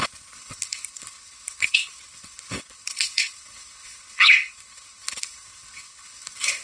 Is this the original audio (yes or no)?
no